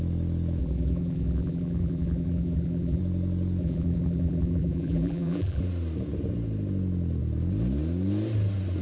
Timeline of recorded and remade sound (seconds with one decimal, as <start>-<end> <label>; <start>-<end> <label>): 0.0-0.6 recorded; 0.6-3.0 remade; 3.0-3.6 recorded; 3.6-5.6 remade; 5.6-8.8 recorded